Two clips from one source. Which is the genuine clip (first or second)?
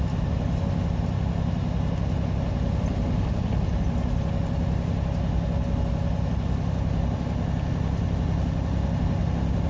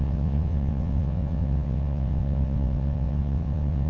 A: first